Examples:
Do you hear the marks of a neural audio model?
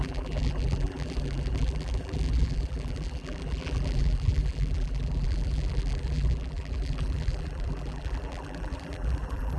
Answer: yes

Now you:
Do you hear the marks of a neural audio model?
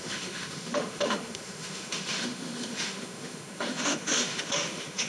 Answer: yes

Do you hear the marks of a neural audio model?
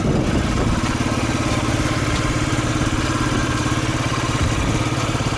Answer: yes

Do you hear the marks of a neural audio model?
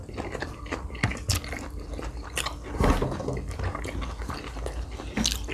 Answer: no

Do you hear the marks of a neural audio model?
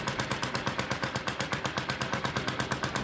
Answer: no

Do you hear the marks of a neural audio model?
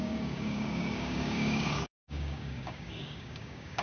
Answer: yes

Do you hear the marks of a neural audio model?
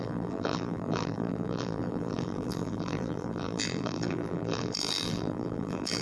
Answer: yes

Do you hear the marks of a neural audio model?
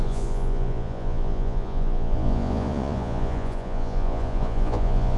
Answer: yes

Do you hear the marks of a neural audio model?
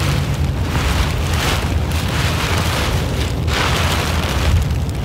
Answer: no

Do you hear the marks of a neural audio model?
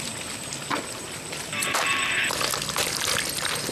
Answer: no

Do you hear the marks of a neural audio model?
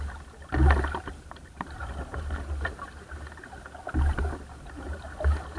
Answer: no